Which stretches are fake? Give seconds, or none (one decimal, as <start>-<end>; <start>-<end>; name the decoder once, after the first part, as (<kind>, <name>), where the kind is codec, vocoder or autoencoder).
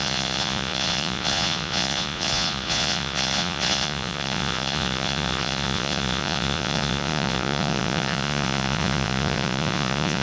0.0-10.2 (vocoder, Vocos)